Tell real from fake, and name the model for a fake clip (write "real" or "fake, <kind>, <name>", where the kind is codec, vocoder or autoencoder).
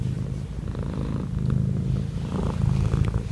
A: real